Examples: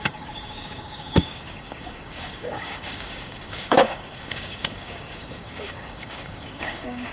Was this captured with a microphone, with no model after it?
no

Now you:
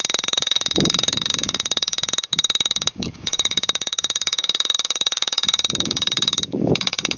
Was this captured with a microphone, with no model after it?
no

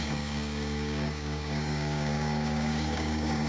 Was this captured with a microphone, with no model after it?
no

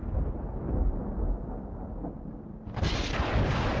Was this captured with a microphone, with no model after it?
yes